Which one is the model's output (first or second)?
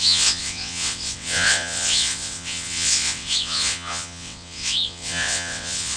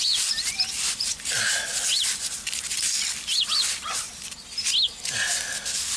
first